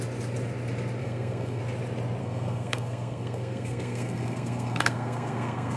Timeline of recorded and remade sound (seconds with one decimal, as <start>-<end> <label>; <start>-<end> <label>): 0.0-1.0 recorded; 1.0-1.6 remade; 1.6-2.2 recorded; 2.2-5.8 remade